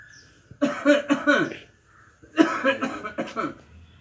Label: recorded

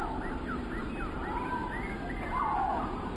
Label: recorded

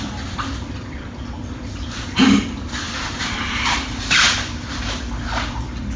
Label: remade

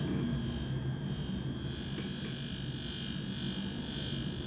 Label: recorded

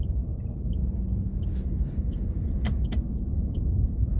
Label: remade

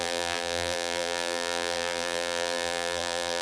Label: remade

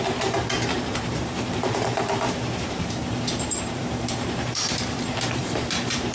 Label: remade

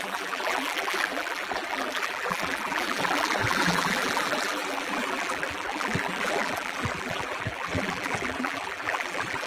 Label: remade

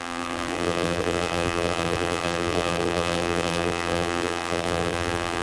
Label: remade